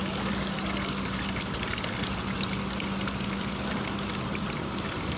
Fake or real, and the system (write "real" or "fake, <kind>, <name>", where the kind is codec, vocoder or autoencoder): real